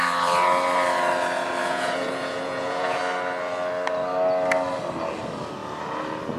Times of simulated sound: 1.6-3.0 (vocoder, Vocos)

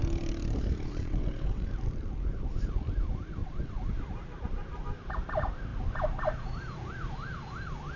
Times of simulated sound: 0.9-1.7 (vocoder, WaveNeXt); 3.4-3.9